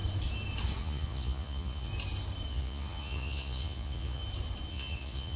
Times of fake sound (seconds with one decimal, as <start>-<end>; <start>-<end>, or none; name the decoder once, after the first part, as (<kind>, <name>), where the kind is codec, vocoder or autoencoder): 0.8-1.9 (vocoder, Vocos); 2.5-4.2; 4.7-5.4